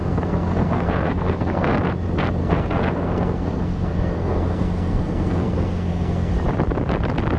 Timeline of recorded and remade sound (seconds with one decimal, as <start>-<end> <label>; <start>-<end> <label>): 0.0-1.8 remade; 1.8-2.4 recorded; 2.4-6.3 remade; 6.3-7.4 recorded